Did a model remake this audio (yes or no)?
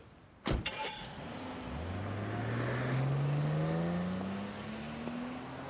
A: no